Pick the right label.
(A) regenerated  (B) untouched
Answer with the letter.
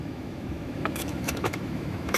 A